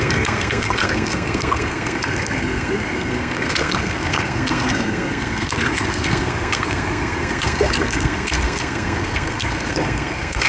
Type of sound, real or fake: fake